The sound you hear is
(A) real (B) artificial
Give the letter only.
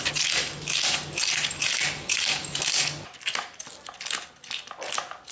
A